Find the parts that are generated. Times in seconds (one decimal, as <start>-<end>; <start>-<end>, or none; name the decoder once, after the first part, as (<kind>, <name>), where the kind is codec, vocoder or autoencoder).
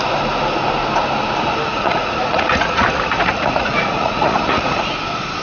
1.7-4.9 (vocoder, Vocos)